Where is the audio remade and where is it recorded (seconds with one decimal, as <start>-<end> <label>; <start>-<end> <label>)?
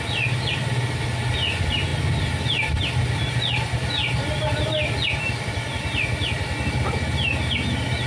0.0-8.1 recorded